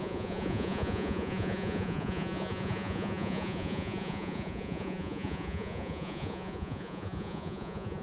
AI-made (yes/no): yes